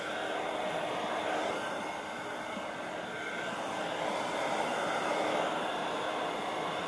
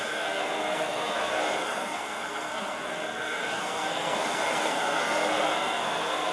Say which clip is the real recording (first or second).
first